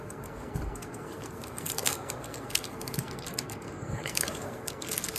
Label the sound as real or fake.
fake